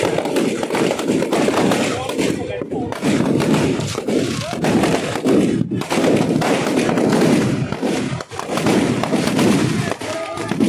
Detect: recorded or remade remade